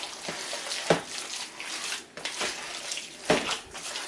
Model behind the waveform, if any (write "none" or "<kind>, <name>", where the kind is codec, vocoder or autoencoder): vocoder, BigVGAN v2